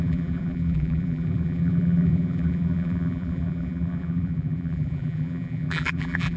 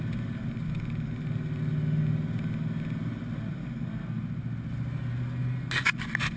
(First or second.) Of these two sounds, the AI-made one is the first